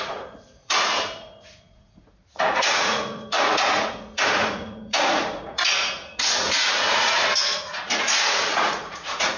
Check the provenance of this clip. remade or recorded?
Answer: remade